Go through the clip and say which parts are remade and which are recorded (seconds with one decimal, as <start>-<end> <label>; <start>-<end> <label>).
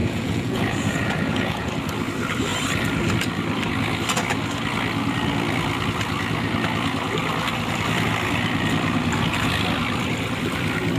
0.0-1.7 remade; 1.7-11.0 recorded